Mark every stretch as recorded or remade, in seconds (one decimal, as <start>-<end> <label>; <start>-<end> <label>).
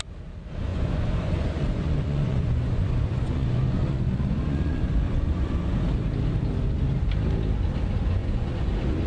0.0-0.7 recorded; 0.7-5.8 remade; 5.8-8.2 recorded; 8.2-8.7 remade; 8.7-9.1 recorded